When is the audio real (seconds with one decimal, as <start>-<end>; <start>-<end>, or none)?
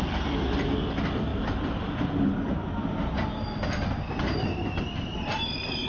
0.0-5.9